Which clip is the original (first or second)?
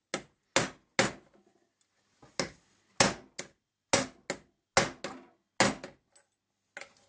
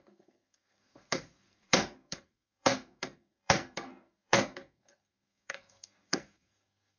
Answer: first